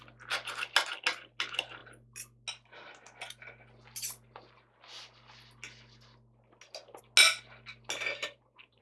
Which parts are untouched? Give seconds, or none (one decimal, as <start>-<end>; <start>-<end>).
0.0-8.2